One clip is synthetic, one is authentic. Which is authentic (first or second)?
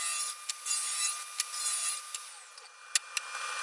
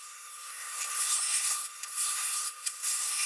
first